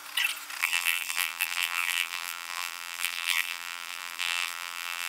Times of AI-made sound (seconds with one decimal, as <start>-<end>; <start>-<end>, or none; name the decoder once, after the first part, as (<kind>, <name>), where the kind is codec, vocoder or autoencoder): 0.6-5.1 (vocoder, BigVGAN v2)